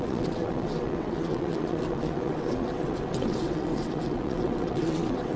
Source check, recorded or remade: remade